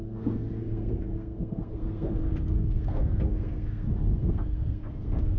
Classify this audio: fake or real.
fake